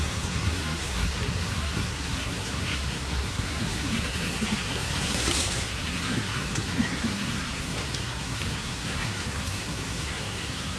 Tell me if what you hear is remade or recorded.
remade